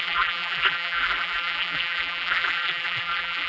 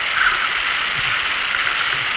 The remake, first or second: first